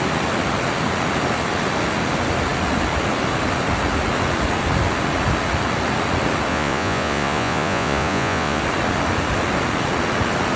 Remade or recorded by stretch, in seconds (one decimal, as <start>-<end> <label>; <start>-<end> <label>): 0.0-6.5 recorded; 6.5-8.6 remade; 8.6-10.6 recorded